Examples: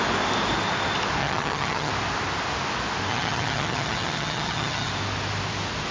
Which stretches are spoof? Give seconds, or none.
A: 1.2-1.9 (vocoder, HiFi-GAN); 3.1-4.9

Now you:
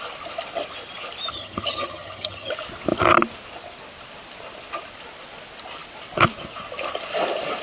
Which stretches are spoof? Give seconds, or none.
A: 1.3-2.5 (vocoder, HiFi-GAN)

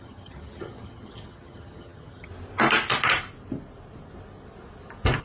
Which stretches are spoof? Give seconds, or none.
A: 0.0-2.3 (vocoder, HiFi-GAN)

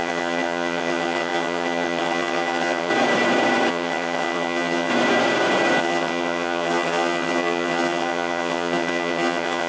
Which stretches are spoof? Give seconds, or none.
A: 0.0-2.9 (vocoder, HiFi-GAN); 3.7-4.9; 5.8-9.7

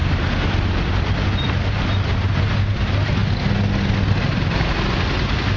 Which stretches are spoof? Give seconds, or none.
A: none

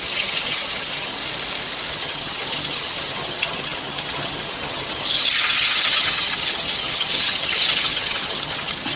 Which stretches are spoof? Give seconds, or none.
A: 0.0-1.2 (vocoder, HiFi-GAN); 1.9-9.0

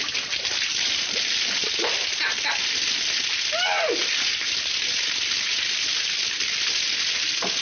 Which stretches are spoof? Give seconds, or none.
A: none